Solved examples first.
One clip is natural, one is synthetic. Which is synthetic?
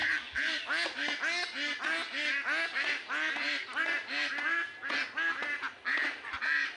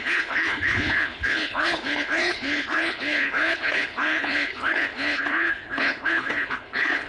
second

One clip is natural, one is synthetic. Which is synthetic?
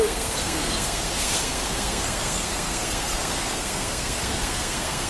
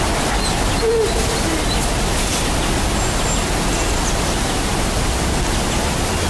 first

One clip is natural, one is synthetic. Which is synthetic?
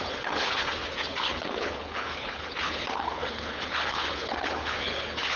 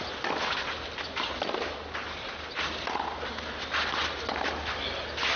first